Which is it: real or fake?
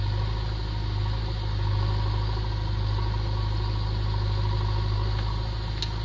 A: real